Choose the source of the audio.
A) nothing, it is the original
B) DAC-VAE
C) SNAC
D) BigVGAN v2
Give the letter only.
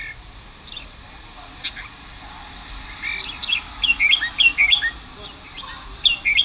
A